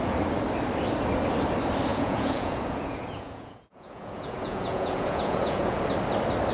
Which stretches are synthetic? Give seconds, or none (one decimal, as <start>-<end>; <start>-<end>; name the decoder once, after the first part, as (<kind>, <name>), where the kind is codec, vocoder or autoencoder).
1.9-5.8 (vocoder, Vocos)